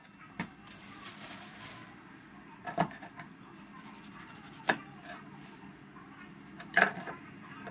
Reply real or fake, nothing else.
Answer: real